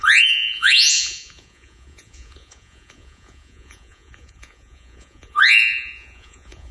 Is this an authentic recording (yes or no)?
no